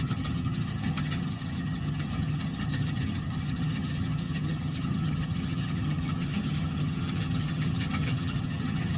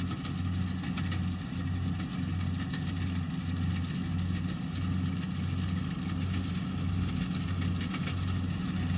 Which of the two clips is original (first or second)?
second